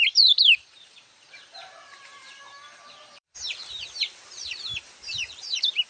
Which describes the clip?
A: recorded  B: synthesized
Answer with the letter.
B